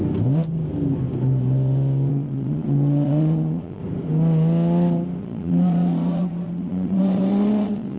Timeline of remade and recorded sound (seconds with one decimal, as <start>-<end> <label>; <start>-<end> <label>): 0.0-2.1 recorded; 2.1-3.8 remade; 3.8-5.2 recorded; 5.2-8.0 remade